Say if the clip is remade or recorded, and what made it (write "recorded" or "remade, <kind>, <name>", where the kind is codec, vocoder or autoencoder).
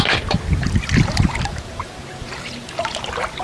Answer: recorded